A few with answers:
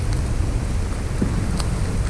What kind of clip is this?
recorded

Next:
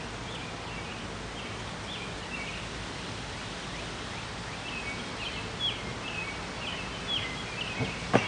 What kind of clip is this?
recorded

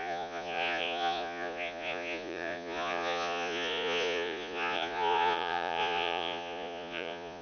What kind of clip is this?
remade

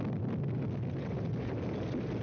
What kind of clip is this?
recorded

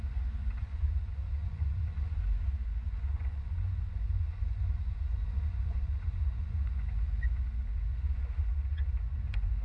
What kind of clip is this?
remade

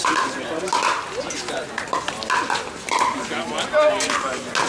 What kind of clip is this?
recorded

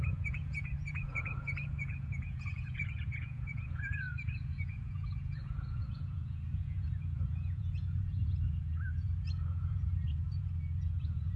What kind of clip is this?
remade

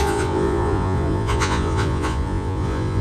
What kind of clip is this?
remade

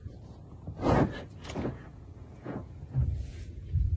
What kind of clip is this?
remade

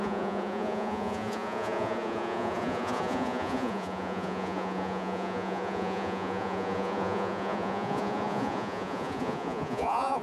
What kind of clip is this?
remade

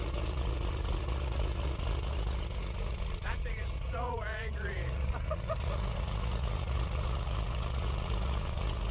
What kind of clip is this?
remade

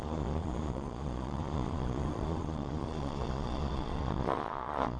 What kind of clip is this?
remade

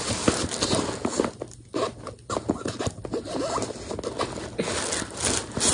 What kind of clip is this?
recorded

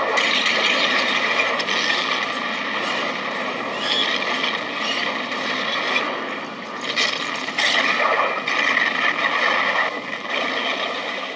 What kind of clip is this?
recorded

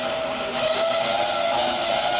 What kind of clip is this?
recorded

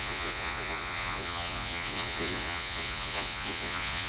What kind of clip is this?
remade